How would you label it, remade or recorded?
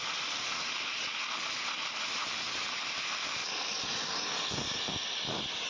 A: recorded